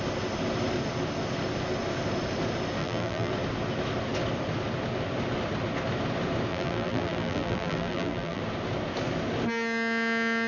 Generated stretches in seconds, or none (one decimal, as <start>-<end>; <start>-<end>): 2.8-3.3; 6.5-8.4